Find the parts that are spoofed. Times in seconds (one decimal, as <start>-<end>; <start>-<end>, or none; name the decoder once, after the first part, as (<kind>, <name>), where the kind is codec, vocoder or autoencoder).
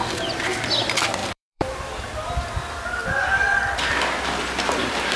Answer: 1.2-1.8 (vocoder, BigVGAN v2)